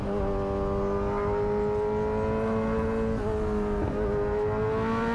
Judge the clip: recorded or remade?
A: recorded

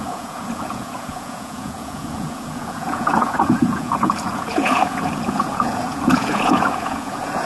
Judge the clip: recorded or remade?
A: remade